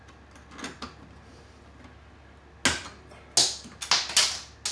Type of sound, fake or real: real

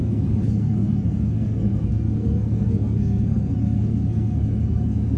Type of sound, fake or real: fake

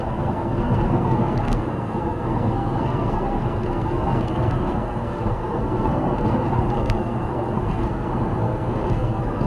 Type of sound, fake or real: fake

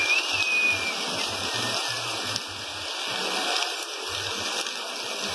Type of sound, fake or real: real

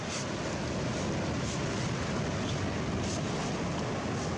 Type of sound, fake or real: real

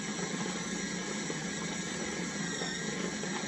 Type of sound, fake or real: real